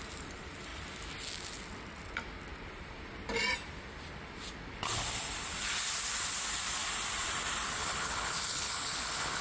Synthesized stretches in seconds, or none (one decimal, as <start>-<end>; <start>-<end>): 7.8-9.4